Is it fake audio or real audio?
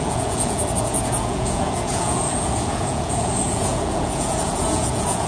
fake